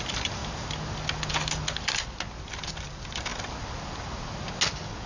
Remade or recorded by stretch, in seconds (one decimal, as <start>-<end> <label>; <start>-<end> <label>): 0.0-0.4 remade; 0.4-2.4 recorded; 2.4-3.3 remade; 3.3-5.1 recorded